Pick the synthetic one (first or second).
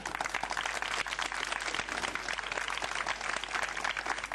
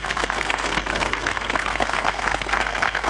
second